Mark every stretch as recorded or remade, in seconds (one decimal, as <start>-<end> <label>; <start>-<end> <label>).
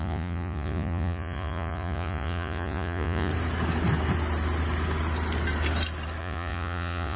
0.0-3.3 remade; 3.3-6.2 recorded; 6.2-7.2 remade